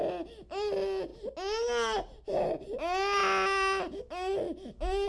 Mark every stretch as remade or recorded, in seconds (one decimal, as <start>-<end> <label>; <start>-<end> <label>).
0.0-5.1 recorded